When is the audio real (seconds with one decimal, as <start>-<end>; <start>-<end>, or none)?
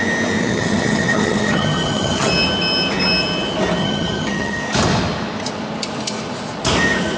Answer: 0.0-0.4; 2.3-3.8; 4.6-7.2